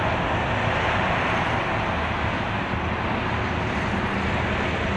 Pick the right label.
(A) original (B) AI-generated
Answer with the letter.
A